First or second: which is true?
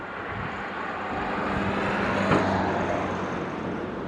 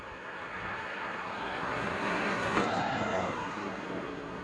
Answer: first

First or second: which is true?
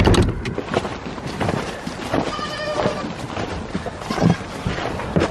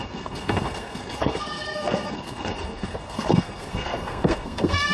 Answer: first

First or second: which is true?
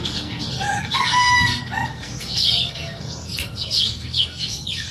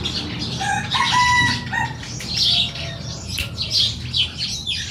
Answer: second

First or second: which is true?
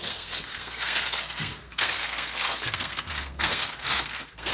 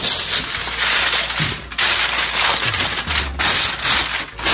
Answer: second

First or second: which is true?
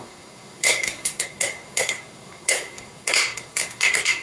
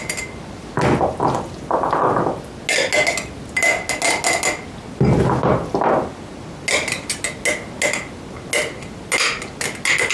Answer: second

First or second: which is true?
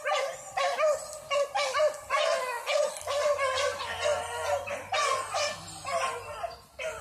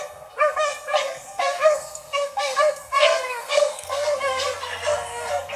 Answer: first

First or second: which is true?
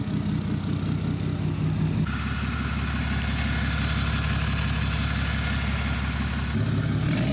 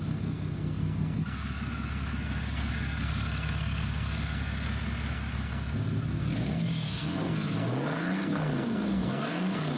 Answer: first